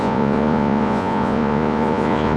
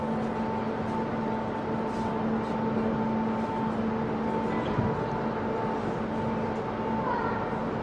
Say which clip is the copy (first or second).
first